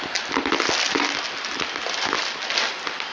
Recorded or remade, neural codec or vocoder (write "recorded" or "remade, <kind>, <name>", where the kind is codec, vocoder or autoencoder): recorded